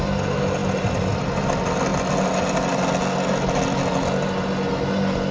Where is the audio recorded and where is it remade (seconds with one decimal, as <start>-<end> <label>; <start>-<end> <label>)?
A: 0.0-5.3 recorded